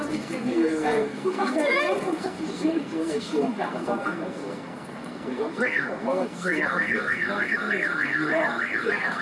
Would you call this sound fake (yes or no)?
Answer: yes